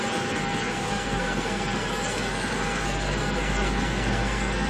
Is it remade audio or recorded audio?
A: remade